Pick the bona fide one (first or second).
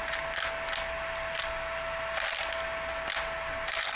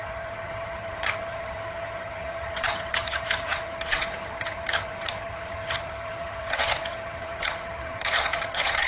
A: first